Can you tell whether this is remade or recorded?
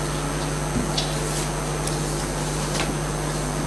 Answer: recorded